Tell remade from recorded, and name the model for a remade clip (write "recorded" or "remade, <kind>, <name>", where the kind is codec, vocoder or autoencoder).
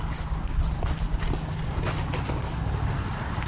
recorded